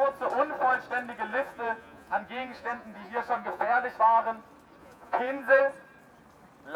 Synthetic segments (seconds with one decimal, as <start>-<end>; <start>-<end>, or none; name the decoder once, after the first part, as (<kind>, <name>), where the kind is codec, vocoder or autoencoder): 1.3-4.0 (vocoder, Vocos); 4.8-5.6